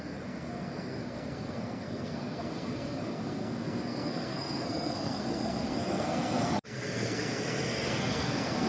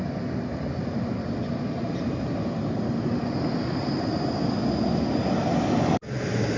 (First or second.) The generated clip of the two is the first